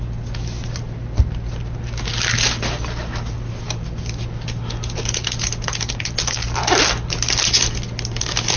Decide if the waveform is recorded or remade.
recorded